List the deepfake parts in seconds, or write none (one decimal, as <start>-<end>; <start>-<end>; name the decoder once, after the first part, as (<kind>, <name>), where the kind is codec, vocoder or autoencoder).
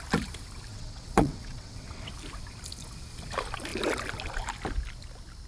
0.7-2.1 (vocoder, WaveNeXt)